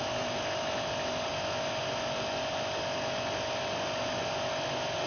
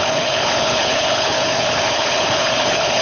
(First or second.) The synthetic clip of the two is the second